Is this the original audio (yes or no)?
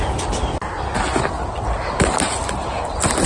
yes